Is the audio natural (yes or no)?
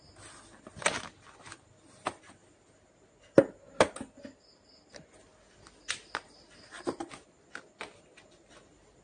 yes